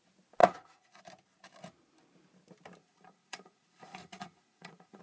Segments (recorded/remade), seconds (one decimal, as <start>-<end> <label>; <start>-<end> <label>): 0.0-0.4 recorded; 0.4-1.0 remade; 1.0-2.8 recorded; 2.8-5.0 remade

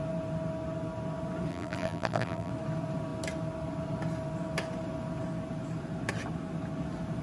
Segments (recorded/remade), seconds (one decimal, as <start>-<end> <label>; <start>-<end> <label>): 0.0-1.5 recorded; 1.5-2.5 remade; 2.5-7.2 recorded

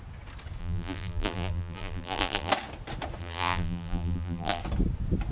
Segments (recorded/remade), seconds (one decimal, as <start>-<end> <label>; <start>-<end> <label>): 0.0-0.6 recorded; 0.6-2.5 remade; 2.5-3.2 recorded; 3.2-4.6 remade; 4.6-5.3 recorded

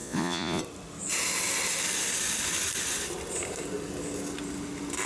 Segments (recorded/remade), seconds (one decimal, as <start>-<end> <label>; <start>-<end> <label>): 0.0-0.6 remade; 0.6-5.1 recorded

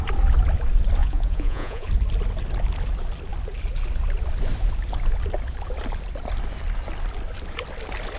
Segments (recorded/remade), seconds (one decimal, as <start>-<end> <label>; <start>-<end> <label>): 0.0-1.0 recorded; 1.0-1.9 remade; 1.9-8.2 recorded

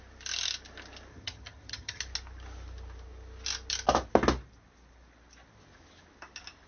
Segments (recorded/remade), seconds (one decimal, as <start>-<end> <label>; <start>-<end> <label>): 0.0-1.1 recorded; 1.1-2.0 remade; 2.0-6.7 recorded

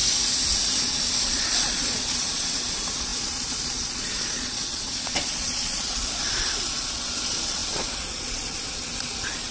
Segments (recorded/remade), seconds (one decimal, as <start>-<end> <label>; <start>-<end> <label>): 0.0-0.8 recorded; 0.8-9.5 remade

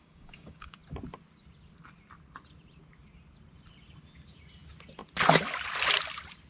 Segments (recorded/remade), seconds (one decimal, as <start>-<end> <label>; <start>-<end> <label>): 0.0-0.8 remade; 0.8-6.5 recorded